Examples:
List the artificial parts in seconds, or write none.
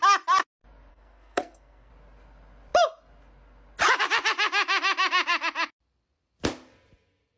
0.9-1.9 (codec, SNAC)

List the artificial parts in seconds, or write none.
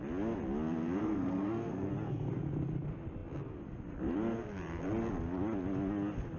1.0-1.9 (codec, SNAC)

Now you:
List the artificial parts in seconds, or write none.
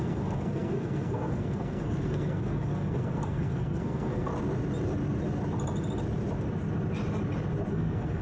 0.0-4.3 (codec, SNAC); 7.7-8.2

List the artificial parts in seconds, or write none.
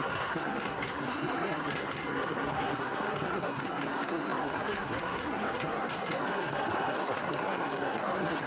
0.0-8.5 (codec, SNAC)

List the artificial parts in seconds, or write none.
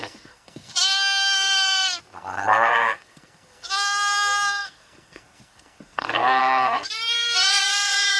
0.0-8.2 (codec, SNAC)